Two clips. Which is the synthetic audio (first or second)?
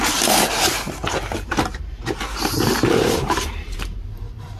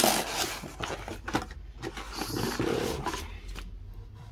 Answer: first